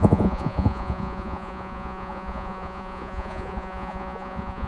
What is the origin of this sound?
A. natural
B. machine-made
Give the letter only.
B